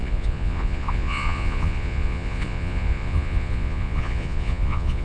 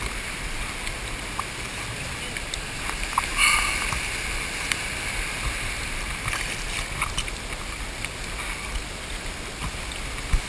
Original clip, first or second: second